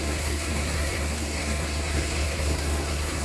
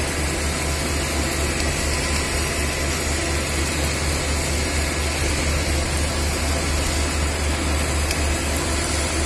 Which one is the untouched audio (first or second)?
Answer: second